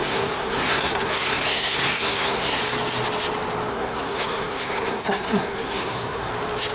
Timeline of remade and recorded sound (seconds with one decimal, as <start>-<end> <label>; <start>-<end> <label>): 0.0-2.6 remade; 2.6-3.7 recorded; 3.7-6.3 remade; 6.3-6.7 recorded